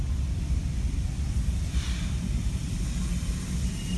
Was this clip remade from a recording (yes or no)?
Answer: no